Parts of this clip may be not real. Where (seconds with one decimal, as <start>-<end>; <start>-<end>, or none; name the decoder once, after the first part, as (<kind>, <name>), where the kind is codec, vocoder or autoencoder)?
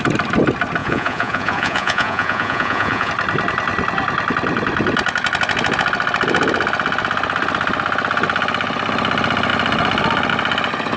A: 0.8-3.1 (vocoder, Vocos)